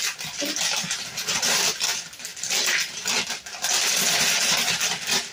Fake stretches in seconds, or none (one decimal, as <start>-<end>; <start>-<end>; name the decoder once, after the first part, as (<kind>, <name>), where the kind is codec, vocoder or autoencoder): none